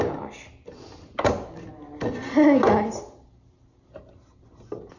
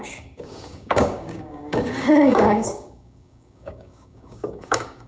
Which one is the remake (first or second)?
second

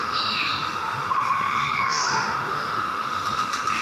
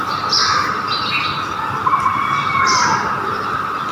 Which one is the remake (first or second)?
first